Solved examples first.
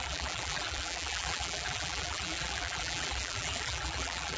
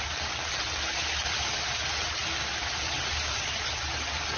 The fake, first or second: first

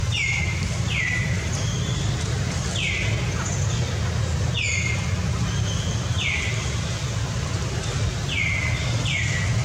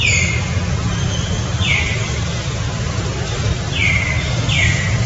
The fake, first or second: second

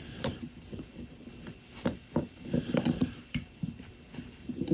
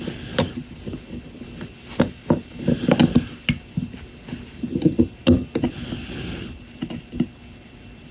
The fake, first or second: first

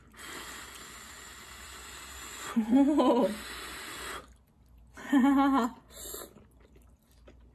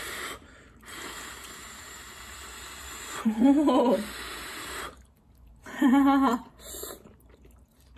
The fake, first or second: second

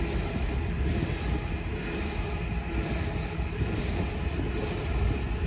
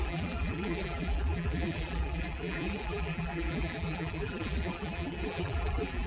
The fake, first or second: second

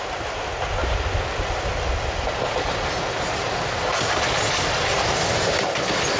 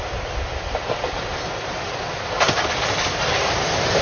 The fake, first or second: second